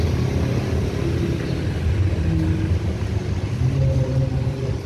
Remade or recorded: recorded